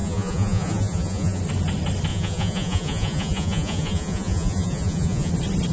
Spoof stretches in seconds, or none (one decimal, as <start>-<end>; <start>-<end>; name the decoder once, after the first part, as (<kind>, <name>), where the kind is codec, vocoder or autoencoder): 0.0-1.4 (vocoder, Vocos); 2.1-5.3